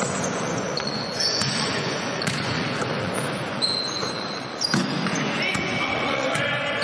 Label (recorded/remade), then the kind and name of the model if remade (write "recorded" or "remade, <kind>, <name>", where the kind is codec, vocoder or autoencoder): remade, vocoder, Vocos